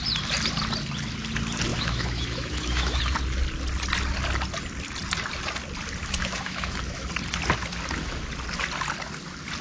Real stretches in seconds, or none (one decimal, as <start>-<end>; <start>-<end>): 0.0-1.7; 3.0-6.0; 7.1-9.6